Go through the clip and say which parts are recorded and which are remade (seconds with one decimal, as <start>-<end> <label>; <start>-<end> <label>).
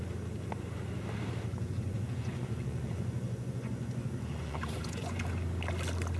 0.0-1.5 recorded; 1.5-5.2 remade; 5.2-6.2 recorded